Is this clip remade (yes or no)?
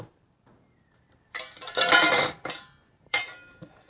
yes